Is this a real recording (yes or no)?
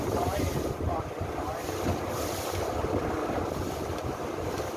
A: yes